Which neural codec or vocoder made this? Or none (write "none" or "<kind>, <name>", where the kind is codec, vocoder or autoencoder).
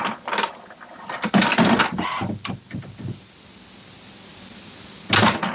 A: none